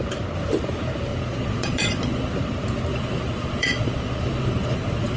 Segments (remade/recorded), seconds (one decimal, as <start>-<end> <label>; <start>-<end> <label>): 0.0-1.1 recorded; 1.1-2.3 remade; 2.3-2.9 recorded; 2.9-5.2 remade